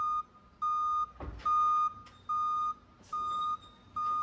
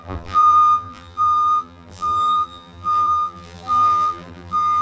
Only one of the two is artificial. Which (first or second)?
second